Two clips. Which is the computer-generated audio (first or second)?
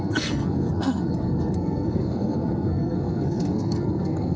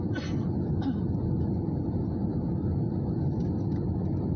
first